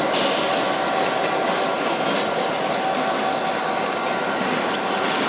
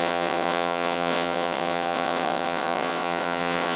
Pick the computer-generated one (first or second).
second